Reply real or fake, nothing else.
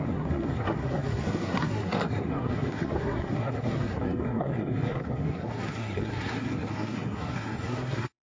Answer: fake